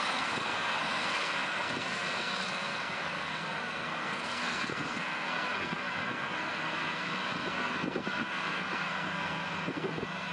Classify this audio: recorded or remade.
remade